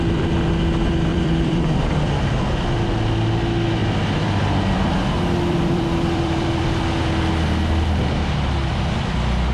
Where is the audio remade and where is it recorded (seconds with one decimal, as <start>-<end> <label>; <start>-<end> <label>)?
0.0-1.1 recorded; 1.1-2.3 remade; 2.3-3.8 recorded; 3.8-7.3 remade; 7.3-9.5 recorded